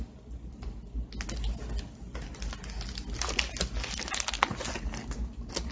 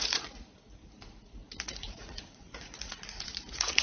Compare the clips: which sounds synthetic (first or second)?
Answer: second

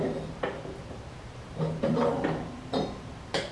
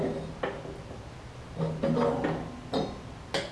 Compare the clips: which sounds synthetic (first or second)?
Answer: first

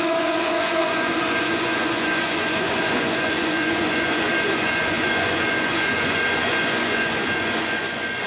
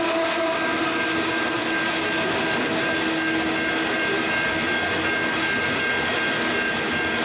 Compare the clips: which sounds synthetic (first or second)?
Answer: first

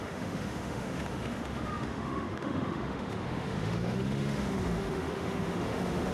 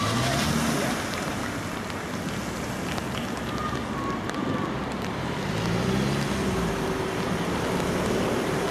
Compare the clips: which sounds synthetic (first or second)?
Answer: first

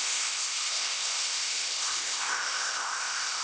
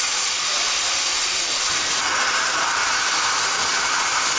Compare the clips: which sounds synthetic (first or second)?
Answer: first